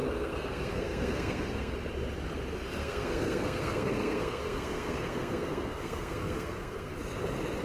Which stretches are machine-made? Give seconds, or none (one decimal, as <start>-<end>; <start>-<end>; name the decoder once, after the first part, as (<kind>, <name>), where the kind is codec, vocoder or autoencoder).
0.0-1.7 (codec, SNAC); 2.8-6.9